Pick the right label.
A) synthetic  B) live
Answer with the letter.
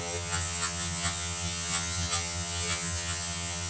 A